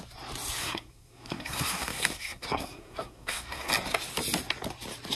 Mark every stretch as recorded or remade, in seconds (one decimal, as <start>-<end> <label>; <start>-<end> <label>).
0.0-0.6 recorded; 0.6-3.7 remade; 3.7-5.1 recorded

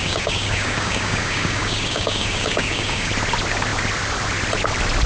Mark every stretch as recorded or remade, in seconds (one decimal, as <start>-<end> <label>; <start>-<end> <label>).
0.0-3.1 remade; 3.1-5.1 recorded

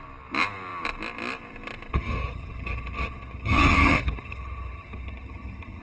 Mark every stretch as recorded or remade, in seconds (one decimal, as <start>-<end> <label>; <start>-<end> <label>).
0.0-1.9 recorded; 1.9-5.8 remade